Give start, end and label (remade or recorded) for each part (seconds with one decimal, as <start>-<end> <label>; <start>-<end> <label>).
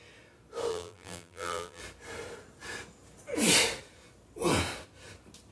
0.0-0.7 recorded; 0.7-1.8 remade; 1.8-5.5 recorded